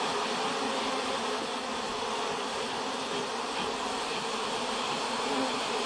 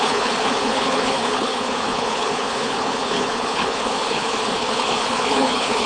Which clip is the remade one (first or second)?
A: second